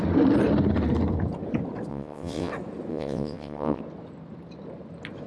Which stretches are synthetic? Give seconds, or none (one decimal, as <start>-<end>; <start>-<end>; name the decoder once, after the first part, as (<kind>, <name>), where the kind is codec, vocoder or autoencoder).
1.9-2.5 (vocoder, WaveNeXt); 2.9-3.8